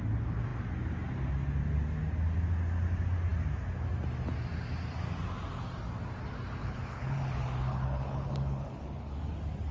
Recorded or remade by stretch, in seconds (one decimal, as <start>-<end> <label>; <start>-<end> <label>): 0.0-6.6 recorded; 6.6-9.2 remade; 9.2-9.7 recorded